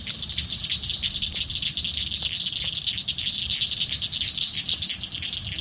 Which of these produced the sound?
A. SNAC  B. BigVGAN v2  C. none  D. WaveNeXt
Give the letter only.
C